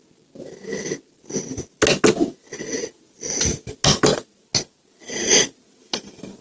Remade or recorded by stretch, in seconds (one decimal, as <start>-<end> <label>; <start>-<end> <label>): 0.0-6.4 recorded